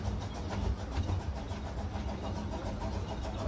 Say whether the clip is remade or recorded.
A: recorded